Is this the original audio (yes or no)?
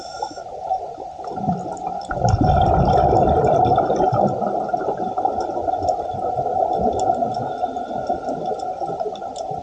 no